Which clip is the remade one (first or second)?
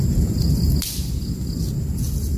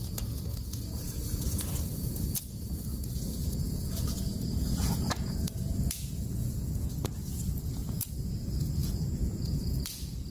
second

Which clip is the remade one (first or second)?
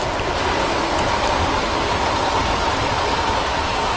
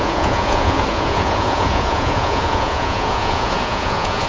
second